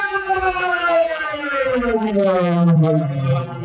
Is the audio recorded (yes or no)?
no